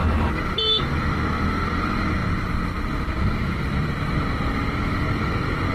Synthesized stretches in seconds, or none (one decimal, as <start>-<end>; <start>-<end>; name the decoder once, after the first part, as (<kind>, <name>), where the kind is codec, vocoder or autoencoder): 2.2-5.7 (vocoder, BigVGAN v2)